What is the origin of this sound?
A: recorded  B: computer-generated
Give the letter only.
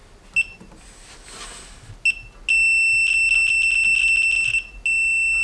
A